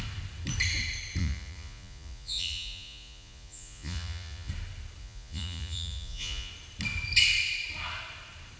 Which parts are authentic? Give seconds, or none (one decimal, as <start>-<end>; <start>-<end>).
0.0-1.2; 4.5-5.0; 6.5-8.6